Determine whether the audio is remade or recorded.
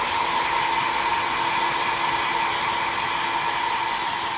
recorded